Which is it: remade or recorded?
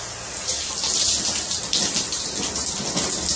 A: recorded